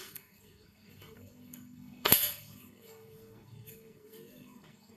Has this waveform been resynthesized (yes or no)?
yes